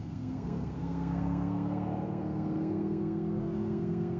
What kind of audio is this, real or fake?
fake